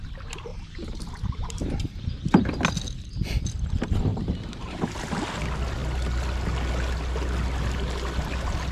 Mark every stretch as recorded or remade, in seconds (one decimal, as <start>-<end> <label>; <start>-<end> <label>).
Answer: 0.0-0.5 recorded; 0.5-2.5 remade; 2.5-4.1 recorded; 4.1-4.9 remade; 4.9-8.7 recorded